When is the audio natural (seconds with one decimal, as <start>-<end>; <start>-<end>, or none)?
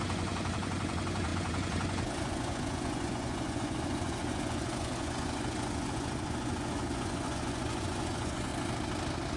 8.5-9.4